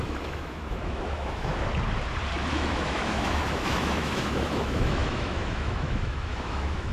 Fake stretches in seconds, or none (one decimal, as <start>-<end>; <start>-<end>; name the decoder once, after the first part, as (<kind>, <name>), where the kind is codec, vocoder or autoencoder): 0.0-1.5 (autoencoder, DAC-VAE); 2.5-6.9